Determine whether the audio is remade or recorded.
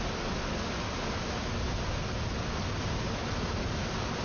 recorded